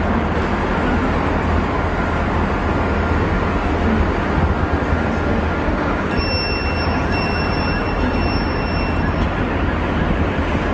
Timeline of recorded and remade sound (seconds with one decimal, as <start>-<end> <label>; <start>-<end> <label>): 0.0-5.6 recorded; 5.6-6.1 remade; 6.1-10.7 recorded